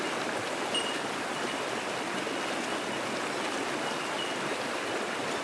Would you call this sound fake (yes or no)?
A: no